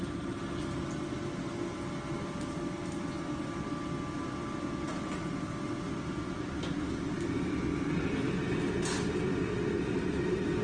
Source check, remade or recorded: recorded